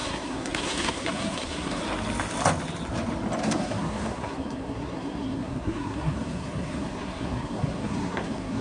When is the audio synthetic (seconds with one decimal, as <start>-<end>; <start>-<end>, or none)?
0.0-1.8; 3.4-8.6